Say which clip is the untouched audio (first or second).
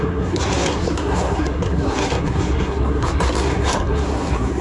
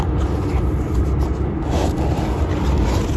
second